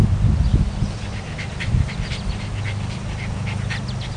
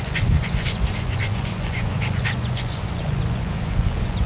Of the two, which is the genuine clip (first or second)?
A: first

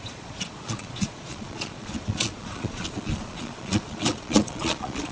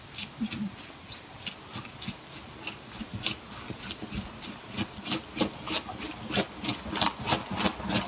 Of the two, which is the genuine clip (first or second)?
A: second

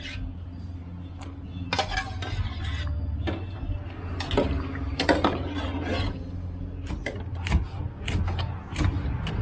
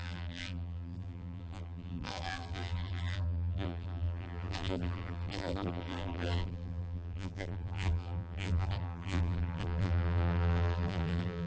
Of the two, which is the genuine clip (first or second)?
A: first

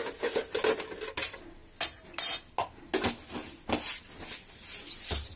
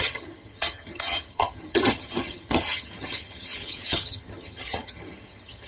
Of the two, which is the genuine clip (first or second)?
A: first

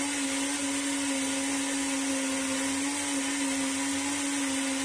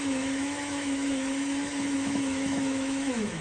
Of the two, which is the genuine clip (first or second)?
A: first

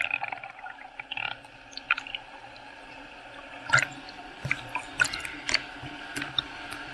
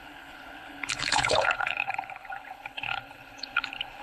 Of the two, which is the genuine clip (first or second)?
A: first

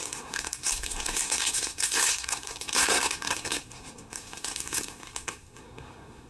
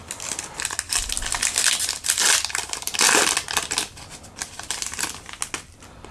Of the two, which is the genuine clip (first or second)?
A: second